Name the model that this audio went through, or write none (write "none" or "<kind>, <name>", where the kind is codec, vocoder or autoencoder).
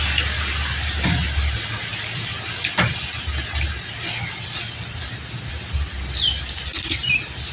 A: none